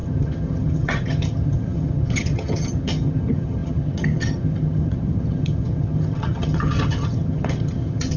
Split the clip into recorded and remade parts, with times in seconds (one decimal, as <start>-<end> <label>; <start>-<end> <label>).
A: 0.0-8.2 remade